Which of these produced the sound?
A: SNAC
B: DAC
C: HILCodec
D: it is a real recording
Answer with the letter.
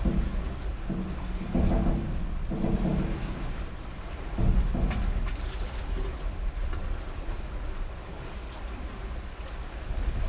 D